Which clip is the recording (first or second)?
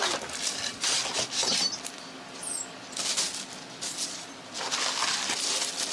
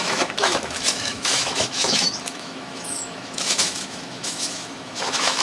first